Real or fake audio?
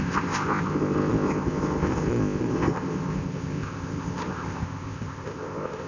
fake